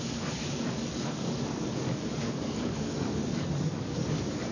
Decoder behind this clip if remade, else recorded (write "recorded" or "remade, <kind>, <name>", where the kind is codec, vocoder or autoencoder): remade, codec, DAC